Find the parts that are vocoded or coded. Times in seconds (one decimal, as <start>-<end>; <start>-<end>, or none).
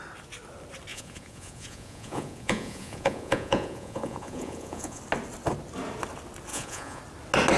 0.9-5.0; 6.5-7.0